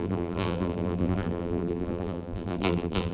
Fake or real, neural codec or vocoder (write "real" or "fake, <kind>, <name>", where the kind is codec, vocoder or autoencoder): fake, vocoder, BigVGAN v2